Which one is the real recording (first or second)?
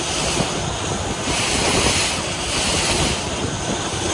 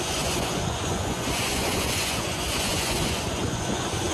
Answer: first